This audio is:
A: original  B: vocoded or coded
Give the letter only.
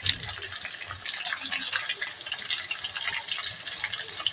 A